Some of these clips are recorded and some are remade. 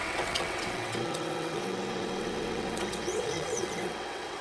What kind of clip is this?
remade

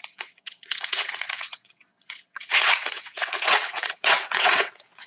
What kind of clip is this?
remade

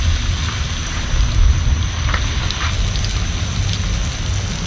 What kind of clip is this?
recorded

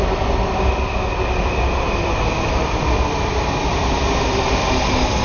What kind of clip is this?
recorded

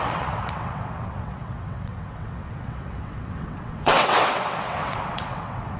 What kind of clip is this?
remade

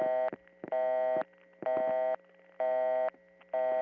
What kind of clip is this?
recorded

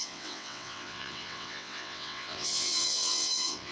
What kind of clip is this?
remade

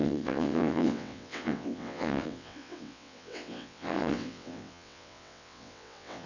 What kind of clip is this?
remade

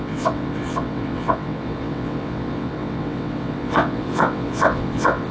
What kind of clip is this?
remade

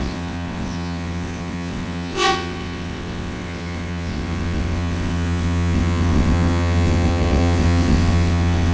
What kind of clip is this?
remade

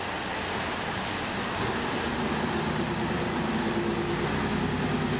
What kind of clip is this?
recorded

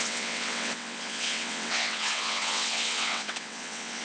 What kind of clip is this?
remade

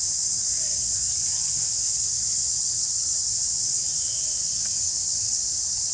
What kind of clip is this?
remade